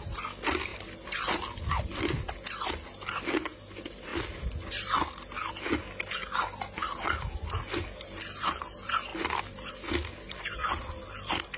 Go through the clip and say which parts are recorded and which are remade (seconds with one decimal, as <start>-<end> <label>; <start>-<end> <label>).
0.0-11.6 recorded